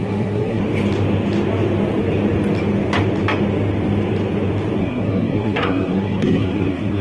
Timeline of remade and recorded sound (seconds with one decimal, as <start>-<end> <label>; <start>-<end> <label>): 0.0-0.6 remade; 0.6-4.8 recorded; 4.8-7.0 remade